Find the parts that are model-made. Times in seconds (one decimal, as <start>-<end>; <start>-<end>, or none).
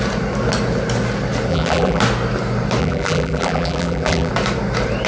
1.5-2.0; 2.8-4.3